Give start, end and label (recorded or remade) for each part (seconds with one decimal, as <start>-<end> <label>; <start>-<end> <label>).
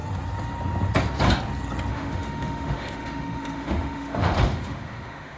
0.0-1.9 recorded; 1.9-5.4 remade